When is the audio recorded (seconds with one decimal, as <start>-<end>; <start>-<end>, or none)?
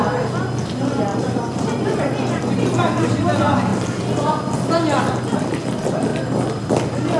0.0-1.1; 2.4-6.1; 6.6-7.2